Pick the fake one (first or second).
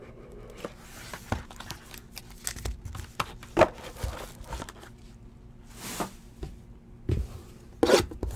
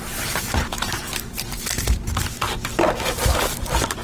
second